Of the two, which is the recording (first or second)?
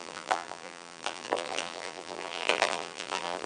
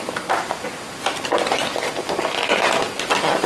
second